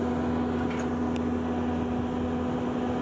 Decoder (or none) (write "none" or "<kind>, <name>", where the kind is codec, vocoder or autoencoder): none